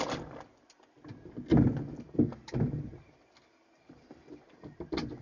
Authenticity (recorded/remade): recorded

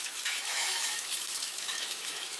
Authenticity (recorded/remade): remade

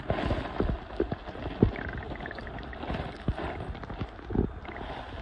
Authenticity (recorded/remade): recorded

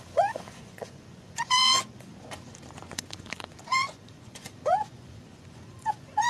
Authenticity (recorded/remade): remade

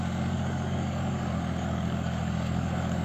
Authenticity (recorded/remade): remade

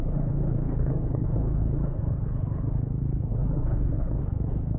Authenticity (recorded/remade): remade